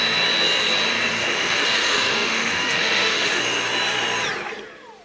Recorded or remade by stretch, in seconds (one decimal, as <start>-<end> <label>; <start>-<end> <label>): 0.0-1.2 recorded; 1.2-3.4 remade; 3.4-5.0 recorded